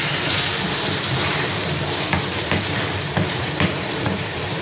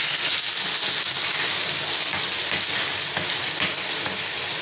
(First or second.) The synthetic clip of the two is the first